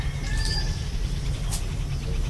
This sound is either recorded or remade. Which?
recorded